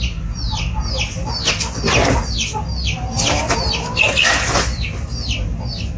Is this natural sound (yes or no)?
yes